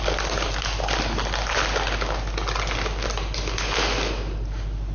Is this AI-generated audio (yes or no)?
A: no